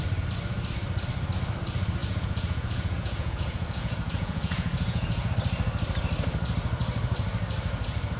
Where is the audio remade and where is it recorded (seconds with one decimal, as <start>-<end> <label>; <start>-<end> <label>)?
0.0-2.0 recorded; 2.0-5.3 remade; 5.3-8.2 recorded